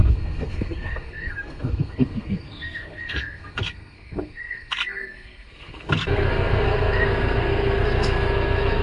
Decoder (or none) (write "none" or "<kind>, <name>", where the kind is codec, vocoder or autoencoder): codec, SNAC